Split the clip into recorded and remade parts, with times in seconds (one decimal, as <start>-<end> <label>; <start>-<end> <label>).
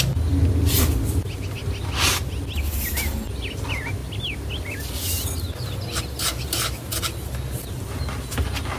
0.0-8.8 recorded